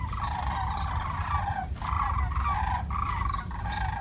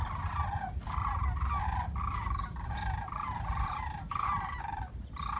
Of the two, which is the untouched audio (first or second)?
first